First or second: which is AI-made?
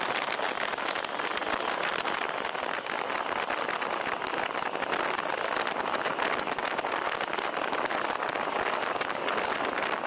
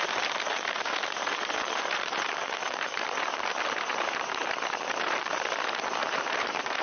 second